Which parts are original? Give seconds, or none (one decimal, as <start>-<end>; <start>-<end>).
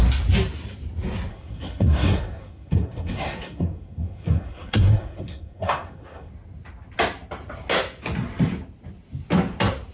0.0-1.3; 6.3-9.9